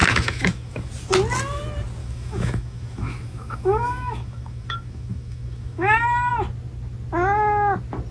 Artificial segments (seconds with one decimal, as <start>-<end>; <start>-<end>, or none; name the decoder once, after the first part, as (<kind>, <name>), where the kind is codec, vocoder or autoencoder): 0.0-0.9 (autoencoder, DAC-VAE); 2.0-6.3